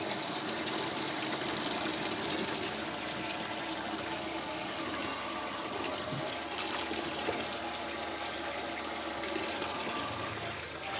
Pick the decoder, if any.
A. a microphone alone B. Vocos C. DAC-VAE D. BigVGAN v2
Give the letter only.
A